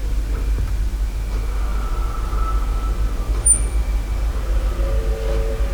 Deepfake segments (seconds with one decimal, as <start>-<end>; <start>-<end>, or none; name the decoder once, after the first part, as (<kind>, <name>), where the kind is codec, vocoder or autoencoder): none

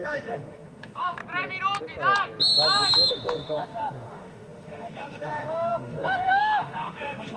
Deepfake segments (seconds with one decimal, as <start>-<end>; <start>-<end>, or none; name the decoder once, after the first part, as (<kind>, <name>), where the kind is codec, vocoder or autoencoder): 0.0-1.2 (autoencoder, DAC-VAE); 3.1-7.4

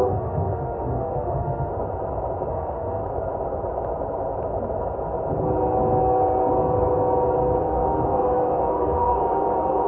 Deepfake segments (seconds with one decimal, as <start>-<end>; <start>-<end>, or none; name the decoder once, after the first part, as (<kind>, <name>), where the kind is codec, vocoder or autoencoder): 0.0-1.7 (autoencoder, DAC-VAE); 2.5-3.0; 7.6-9.9

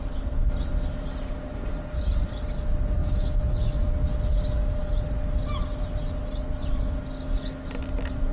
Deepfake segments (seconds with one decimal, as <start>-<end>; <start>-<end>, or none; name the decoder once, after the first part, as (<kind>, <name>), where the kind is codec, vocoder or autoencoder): 3.0-3.9 (autoencoder, DAC-VAE)

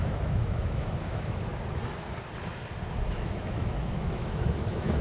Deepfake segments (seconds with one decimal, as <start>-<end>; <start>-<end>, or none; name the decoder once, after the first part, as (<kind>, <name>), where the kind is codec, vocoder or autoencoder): 0.0-1.5 (autoencoder, DAC-VAE); 2.9-5.0

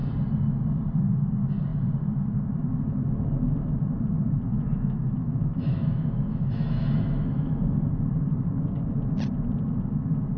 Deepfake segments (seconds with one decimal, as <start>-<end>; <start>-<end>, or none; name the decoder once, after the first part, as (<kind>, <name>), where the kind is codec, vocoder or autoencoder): 4.5-7.6 (autoencoder, DAC-VAE)